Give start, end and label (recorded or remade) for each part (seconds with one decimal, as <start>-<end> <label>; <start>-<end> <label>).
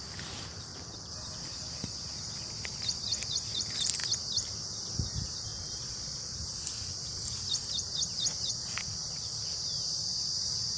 0.0-0.7 recorded; 0.7-1.3 remade; 1.3-10.8 recorded